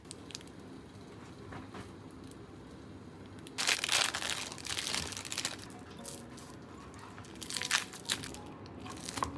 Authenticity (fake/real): real